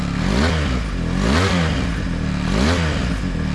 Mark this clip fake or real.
real